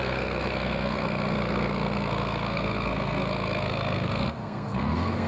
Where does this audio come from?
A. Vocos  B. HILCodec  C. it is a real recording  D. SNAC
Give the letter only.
D